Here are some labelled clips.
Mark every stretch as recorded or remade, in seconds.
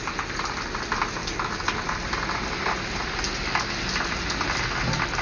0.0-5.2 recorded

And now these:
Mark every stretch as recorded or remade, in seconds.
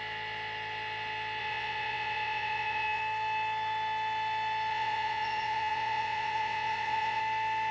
0.0-1.4 recorded; 1.4-3.0 remade; 3.0-4.7 recorded; 4.7-7.2 remade; 7.2-7.7 recorded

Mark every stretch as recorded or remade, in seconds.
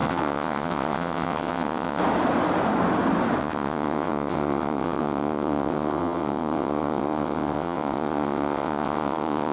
0.0-2.0 remade; 2.0-3.4 recorded; 3.4-9.5 remade